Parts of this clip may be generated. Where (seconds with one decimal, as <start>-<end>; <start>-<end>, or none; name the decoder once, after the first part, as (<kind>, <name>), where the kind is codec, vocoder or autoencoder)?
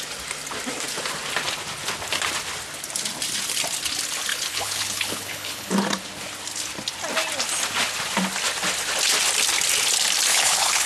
4.3-5.7 (codec, HILCodec); 10.3-10.9